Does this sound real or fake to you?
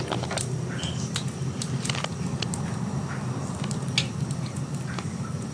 real